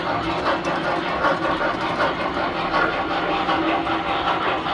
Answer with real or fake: real